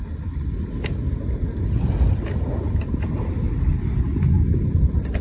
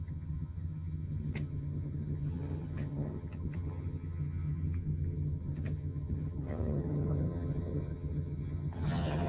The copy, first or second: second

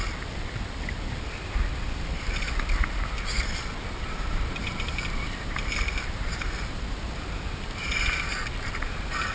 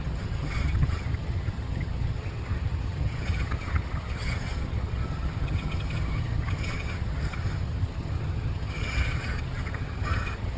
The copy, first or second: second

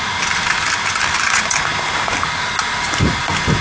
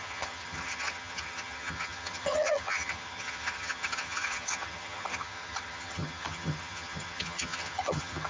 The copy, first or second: second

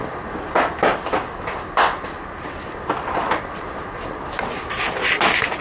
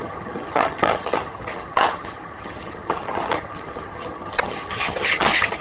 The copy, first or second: second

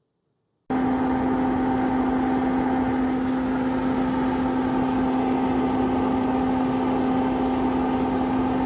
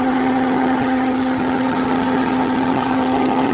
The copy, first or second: second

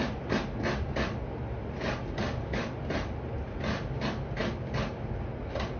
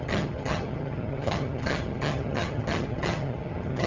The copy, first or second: second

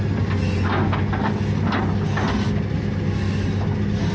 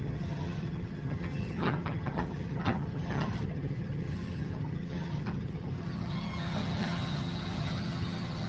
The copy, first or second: second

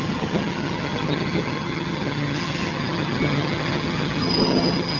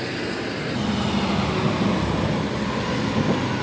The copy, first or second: first